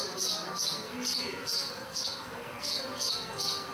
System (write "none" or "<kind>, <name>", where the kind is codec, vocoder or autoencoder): codec, SNAC